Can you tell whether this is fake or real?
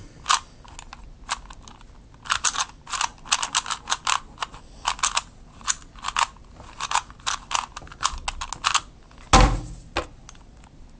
real